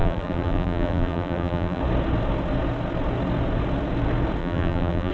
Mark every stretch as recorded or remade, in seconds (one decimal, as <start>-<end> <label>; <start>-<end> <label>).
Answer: 0.0-1.8 remade; 1.8-4.4 recorded; 4.4-5.1 remade